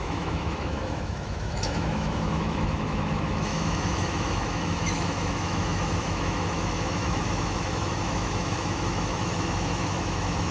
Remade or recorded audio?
remade